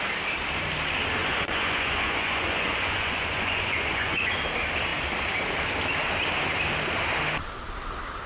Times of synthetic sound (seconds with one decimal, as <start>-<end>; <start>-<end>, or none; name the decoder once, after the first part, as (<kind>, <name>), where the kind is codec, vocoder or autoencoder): 1.2-4.3 (vocoder, Vocos)